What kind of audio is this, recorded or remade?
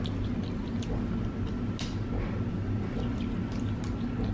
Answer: recorded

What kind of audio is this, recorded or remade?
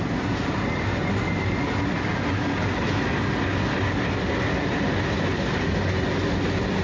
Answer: recorded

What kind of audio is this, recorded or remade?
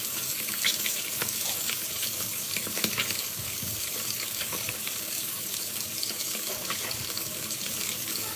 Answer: remade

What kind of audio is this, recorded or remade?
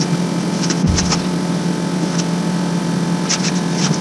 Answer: recorded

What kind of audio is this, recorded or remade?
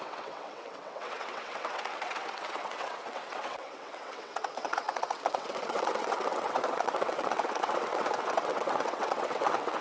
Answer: remade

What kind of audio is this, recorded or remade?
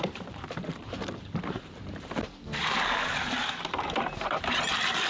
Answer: remade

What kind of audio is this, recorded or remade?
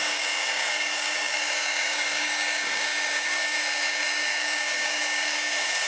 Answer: remade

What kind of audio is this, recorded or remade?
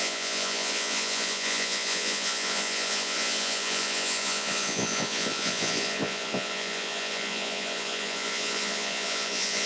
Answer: remade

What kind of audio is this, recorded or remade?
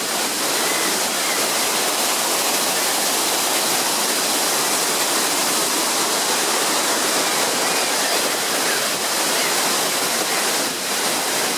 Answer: recorded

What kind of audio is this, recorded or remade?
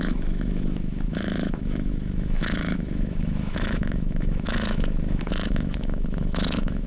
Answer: remade